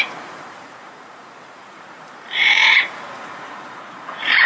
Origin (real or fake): fake